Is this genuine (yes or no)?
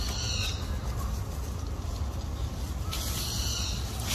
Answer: yes